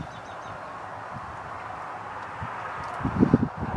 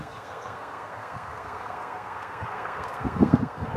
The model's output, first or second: second